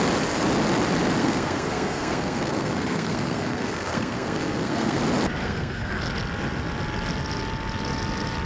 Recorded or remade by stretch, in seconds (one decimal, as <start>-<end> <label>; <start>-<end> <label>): 0.0-1.2 recorded; 1.2-5.0 remade; 5.0-5.4 recorded; 5.4-6.0 remade; 6.0-8.5 recorded